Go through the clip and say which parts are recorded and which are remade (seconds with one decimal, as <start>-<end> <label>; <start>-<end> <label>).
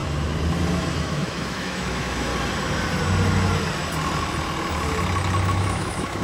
0.0-1.0 recorded; 1.0-2.3 remade; 2.3-5.4 recorded; 5.4-6.2 remade